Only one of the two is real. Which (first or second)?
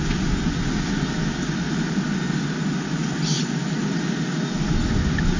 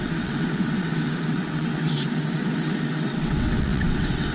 first